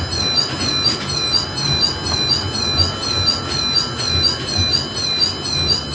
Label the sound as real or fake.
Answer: real